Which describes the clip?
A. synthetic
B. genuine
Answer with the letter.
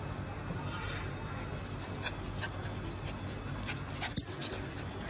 B